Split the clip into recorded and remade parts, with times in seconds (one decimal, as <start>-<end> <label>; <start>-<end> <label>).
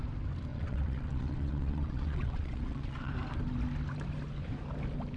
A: 0.0-0.5 recorded; 0.5-3.1 remade; 3.1-5.2 recorded